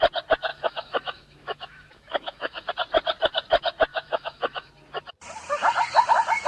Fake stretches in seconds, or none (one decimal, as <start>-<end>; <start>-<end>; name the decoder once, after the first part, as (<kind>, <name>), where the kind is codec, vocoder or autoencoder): 0.5-2.7 (autoencoder, DAC-VAE); 3.9-4.7

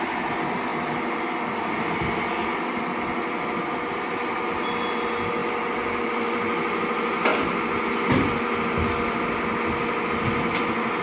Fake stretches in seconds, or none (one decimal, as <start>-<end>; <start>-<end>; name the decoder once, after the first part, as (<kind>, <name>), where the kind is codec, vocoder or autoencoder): none

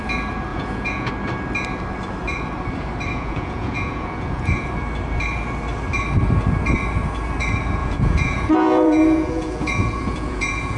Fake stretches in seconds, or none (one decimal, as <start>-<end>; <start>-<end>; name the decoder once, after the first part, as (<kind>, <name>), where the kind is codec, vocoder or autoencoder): 0.5-1.1 (vocoder, Vocos); 3.1-4.7; 7.8-10.8

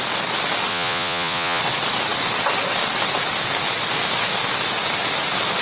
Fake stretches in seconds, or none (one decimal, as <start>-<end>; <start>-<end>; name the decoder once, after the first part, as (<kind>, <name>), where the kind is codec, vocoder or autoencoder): 0.7-1.6 (vocoder, Vocos)

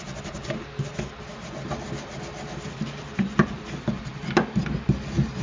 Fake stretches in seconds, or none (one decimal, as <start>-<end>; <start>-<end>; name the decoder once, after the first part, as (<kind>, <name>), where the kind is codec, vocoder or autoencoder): 0.4-3.6 (vocoder, BigVGAN v2)

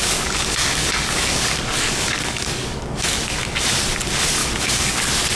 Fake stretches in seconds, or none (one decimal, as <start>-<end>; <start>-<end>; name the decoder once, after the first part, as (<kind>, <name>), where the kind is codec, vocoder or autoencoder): 0.0-3.2 (codec, DAC); 4.4-5.0